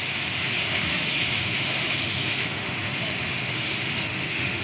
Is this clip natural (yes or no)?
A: no